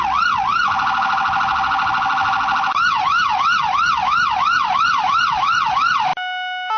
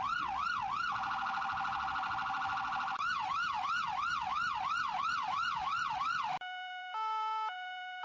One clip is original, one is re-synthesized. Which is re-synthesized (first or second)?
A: second